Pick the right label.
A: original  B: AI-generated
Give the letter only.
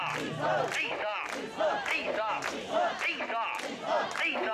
A